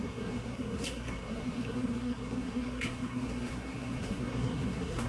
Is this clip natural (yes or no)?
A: no